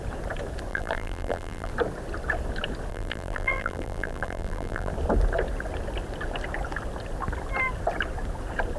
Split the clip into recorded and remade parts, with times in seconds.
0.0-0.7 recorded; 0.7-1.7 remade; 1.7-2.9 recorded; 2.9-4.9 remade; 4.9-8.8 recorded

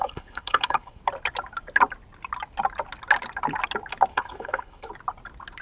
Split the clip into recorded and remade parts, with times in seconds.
0.0-1.0 remade; 1.0-4.1 recorded; 4.1-4.9 remade; 4.9-5.6 recorded